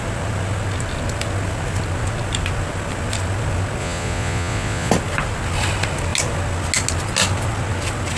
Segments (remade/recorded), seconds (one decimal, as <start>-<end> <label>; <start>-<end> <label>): 0.0-3.8 recorded; 3.8-4.9 remade; 4.9-8.2 recorded